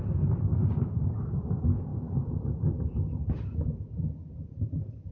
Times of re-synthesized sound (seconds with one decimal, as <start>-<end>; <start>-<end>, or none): 1.9-3.1; 4.2-5.1